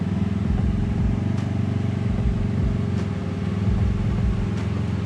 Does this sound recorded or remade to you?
recorded